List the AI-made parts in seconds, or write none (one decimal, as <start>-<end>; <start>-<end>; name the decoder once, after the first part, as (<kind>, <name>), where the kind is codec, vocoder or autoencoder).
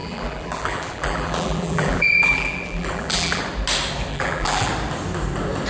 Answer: 0.0-3.4 (vocoder, BigVGAN v2); 4.1-4.7